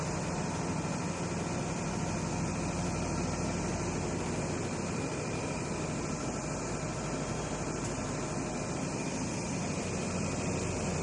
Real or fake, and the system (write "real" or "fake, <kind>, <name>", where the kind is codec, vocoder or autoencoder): real